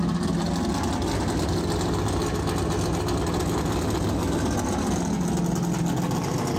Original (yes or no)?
yes